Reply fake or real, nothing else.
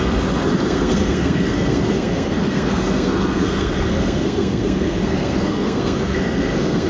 fake